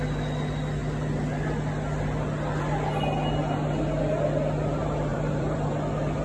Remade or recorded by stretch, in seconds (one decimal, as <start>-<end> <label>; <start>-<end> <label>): 0.0-5.1 recorded; 5.1-5.7 remade; 5.7-6.2 recorded

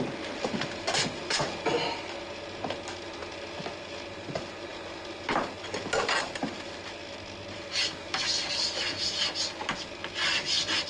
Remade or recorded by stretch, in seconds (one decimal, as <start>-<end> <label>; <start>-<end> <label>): 0.0-10.9 recorded

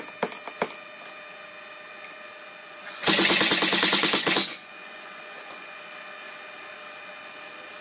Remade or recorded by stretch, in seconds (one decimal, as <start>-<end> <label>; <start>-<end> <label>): 0.0-2.6 recorded; 2.6-5.8 remade; 5.8-7.8 recorded

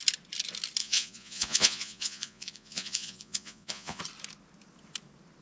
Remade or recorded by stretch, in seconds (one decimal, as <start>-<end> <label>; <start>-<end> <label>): 0.0-0.8 recorded; 0.8-4.0 remade; 4.0-5.4 recorded

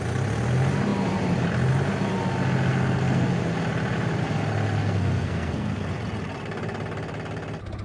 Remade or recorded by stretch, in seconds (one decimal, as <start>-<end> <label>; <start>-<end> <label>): 0.0-2.7 recorded; 2.7-3.3 remade; 3.3-4.8 recorded; 4.8-5.9 remade; 5.9-7.8 recorded

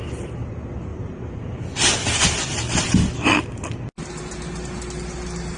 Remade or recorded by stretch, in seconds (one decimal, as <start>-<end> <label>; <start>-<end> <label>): 0.0-5.6 recorded

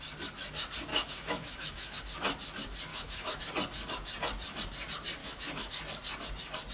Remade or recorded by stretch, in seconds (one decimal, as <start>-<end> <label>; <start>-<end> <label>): 0.0-0.9 recorded; 0.9-2.0 remade; 2.0-2.9 recorded; 2.9-3.4 remade; 3.4-5.2 recorded; 5.2-5.7 remade; 5.7-6.7 recorded